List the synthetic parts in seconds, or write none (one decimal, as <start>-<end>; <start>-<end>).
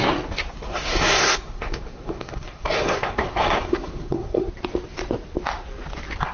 0.7-4.5